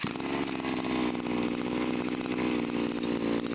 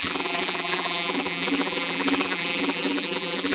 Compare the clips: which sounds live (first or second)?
first